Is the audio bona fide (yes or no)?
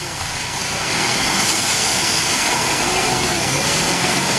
no